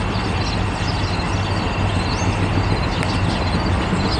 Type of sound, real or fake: real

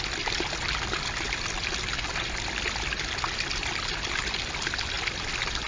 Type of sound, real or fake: real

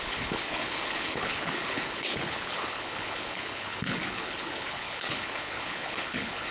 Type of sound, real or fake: fake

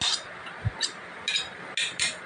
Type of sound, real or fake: real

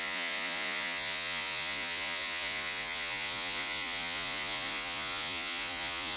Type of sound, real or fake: fake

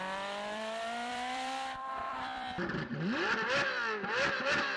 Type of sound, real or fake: fake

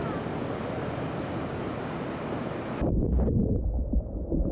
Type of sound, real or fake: real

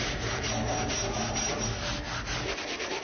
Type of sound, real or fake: real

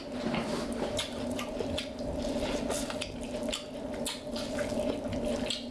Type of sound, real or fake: real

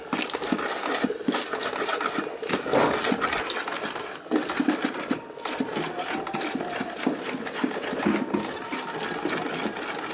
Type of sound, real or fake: real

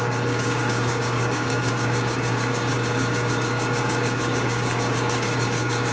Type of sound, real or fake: fake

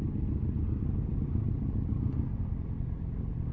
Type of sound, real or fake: real